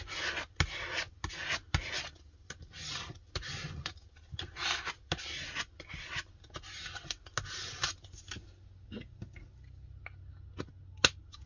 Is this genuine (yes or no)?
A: yes